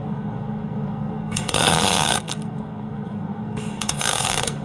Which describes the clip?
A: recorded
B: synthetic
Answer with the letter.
B